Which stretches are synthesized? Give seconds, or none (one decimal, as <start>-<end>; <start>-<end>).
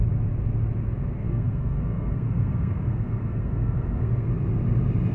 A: 1.2-4.3